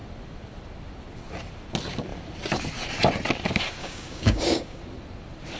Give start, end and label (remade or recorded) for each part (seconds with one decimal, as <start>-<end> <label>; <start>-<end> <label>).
0.0-3.8 recorded; 3.8-4.8 remade; 4.8-5.6 recorded